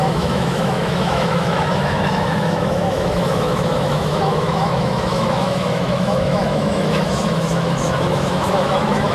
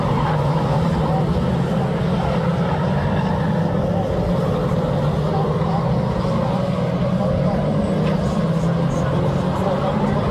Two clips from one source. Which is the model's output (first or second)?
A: first